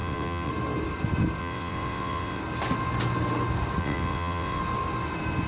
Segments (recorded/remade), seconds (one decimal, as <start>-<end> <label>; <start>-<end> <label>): 0.0-0.5 remade; 0.5-1.4 recorded; 1.4-2.4 remade; 2.4-3.8 recorded; 3.8-4.6 remade; 4.6-5.5 recorded